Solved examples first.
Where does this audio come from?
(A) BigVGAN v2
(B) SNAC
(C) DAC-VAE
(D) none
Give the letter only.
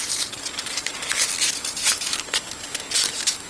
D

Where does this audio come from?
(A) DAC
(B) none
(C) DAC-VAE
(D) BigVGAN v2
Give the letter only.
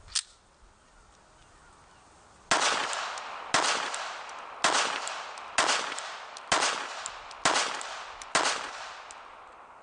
B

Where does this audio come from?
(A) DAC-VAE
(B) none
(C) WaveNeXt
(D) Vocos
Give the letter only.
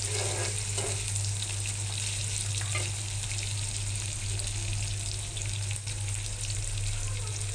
B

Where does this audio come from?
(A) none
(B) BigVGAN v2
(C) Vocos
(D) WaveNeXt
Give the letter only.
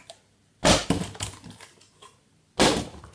A